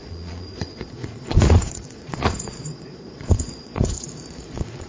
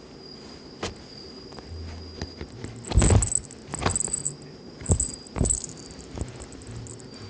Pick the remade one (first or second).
first